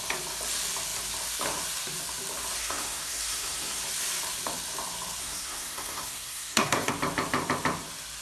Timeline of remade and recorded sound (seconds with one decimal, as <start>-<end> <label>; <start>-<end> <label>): 0.0-2.6 recorded; 2.6-3.8 remade; 3.8-5.2 recorded; 5.2-6.9 remade; 6.9-8.2 recorded